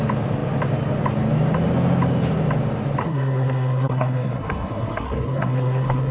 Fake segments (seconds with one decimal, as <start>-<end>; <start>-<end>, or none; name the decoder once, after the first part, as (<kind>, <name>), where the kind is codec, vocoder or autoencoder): 3.0-6.1 (codec, SNAC)